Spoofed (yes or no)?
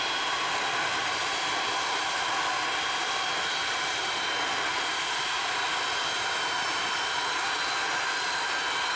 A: no